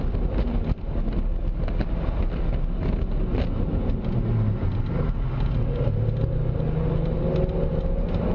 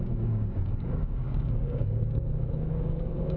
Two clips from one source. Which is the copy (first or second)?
second